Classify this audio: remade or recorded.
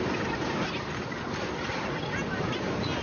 recorded